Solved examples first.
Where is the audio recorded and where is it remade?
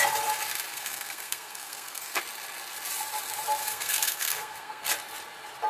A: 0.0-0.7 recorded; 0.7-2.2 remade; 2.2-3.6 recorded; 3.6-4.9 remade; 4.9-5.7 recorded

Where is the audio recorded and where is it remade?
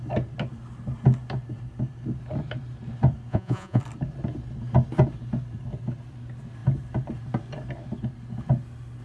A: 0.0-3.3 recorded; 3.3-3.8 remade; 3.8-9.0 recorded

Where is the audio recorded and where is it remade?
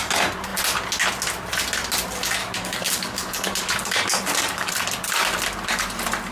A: 0.0-2.4 recorded; 2.4-4.7 remade; 4.7-6.3 recorded